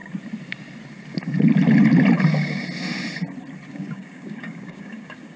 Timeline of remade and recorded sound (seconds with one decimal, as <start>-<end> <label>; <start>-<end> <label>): 0.0-3.7 recorded; 3.7-5.4 remade